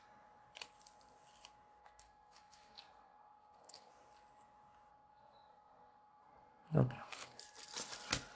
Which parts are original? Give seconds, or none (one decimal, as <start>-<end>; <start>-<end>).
0.0-1.8; 3.9-4.9; 7.4-8.4